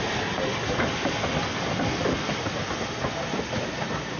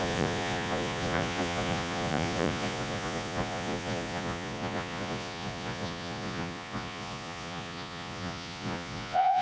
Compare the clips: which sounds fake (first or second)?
second